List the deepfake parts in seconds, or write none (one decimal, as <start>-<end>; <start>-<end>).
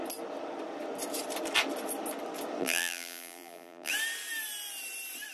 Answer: 2.6-3.9